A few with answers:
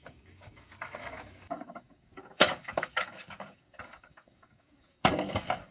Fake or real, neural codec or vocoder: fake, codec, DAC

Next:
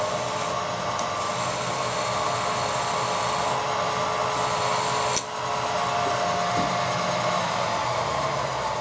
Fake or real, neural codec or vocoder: real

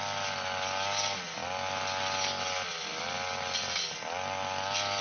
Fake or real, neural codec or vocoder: real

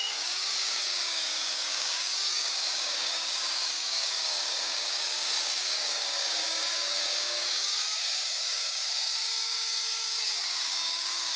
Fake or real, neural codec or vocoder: fake, codec, DAC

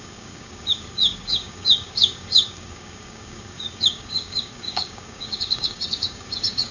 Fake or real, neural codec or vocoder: fake, codec, DAC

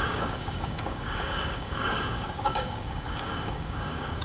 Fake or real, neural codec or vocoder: fake, codec, DAC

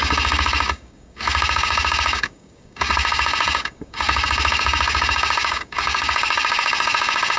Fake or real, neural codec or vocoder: fake, codec, DAC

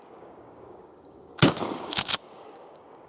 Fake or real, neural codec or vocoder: fake, codec, DAC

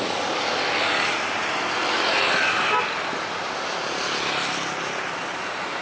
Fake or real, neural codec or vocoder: real